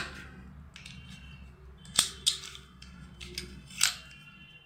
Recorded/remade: recorded